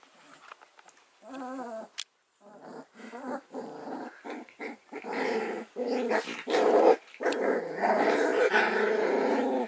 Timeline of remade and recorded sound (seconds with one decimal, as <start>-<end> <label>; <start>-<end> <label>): 0.0-2.7 recorded; 2.7-7.1 remade; 7.1-9.7 recorded